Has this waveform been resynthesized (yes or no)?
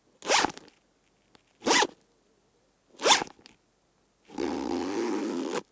no